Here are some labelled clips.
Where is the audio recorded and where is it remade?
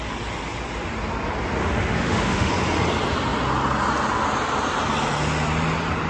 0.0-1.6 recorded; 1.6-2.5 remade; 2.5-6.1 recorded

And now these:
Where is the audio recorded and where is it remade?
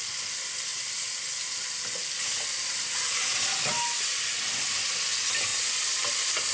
0.0-6.5 recorded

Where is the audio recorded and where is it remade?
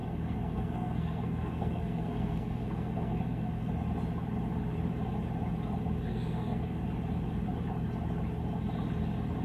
0.0-3.7 remade; 3.7-6.1 recorded; 6.1-6.8 remade; 6.8-9.4 recorded